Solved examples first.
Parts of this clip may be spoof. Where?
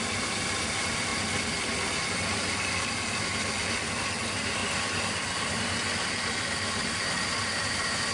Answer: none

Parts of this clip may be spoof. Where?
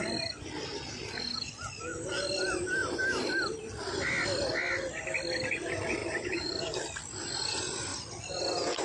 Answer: 2.8-3.3 (vocoder, BigVGAN v2); 6.0-6.7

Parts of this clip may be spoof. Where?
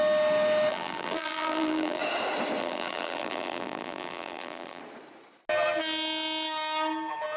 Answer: 0.7-2.0 (vocoder, BigVGAN v2); 2.6-4.8